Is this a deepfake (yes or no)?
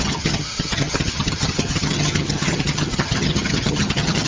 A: yes